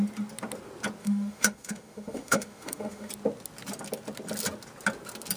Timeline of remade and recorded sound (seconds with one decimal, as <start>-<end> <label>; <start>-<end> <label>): 0.0-1.0 recorded; 1.0-3.1 remade; 3.1-5.4 recorded